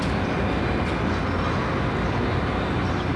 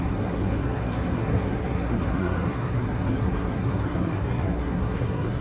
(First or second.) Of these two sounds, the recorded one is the first